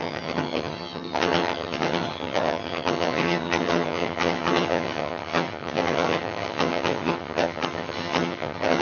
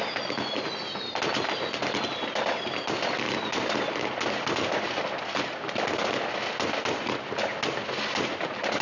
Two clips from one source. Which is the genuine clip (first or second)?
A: second